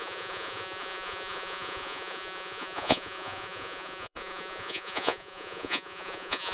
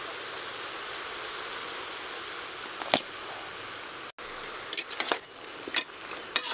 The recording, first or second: second